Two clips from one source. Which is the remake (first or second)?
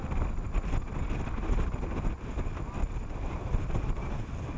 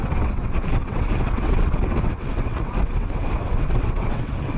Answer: second